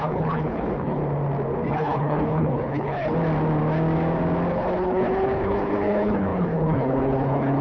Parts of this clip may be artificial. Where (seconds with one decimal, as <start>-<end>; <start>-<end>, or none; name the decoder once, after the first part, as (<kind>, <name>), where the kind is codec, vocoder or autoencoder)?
0.0-1.0 (codec, HILCodec); 1.7-3.1; 4.5-7.6